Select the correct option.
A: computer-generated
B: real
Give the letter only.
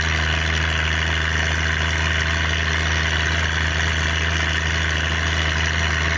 B